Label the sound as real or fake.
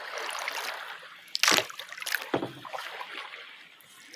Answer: real